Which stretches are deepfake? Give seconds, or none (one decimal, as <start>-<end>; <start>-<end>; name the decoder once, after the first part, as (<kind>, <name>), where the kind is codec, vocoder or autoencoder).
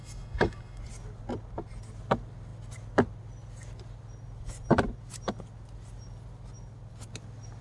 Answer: 0.0-0.8 (autoencoder, DAC-VAE)